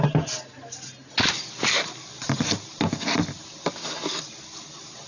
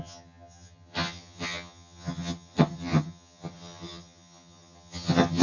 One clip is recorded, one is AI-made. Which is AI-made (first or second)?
second